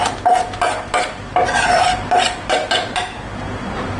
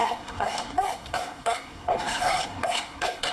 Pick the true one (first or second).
first